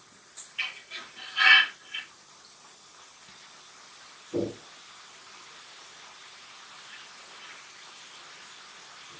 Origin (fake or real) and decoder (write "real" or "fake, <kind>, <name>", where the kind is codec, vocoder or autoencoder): real